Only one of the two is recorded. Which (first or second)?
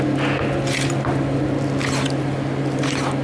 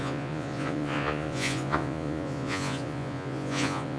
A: first